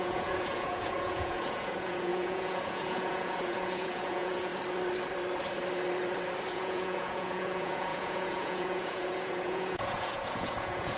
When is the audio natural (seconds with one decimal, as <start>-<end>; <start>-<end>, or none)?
4.5-6.5